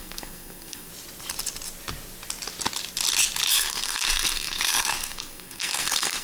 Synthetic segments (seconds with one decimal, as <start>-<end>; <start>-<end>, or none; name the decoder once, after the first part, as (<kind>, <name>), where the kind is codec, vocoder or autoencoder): 0.0-0.9 (codec, SNAC); 3.5-6.2